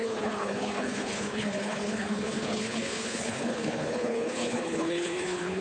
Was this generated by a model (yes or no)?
yes